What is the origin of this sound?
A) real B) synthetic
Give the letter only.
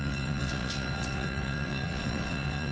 B